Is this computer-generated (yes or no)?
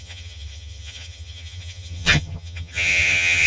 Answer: yes